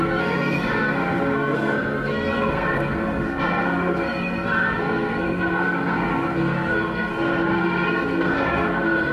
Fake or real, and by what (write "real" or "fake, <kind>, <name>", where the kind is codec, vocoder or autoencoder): fake, codec, SNAC